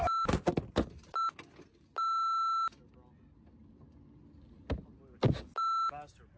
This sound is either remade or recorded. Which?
recorded